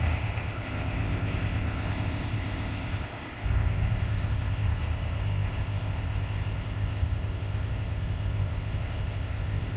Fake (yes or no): yes